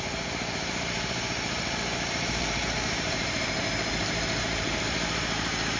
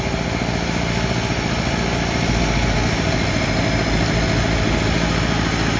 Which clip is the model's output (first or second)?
first